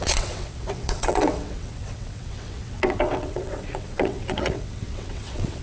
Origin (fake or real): fake